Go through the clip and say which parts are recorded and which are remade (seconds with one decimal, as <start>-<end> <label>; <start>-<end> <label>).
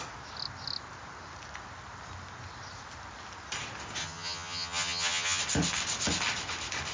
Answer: 0.0-4.0 recorded; 4.0-5.4 remade; 5.4-6.9 recorded